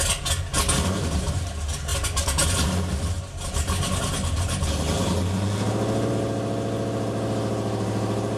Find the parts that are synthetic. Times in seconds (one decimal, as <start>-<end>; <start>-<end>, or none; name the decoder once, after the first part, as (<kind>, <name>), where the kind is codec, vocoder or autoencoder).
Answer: none